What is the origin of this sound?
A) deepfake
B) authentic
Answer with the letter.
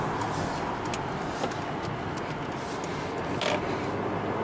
B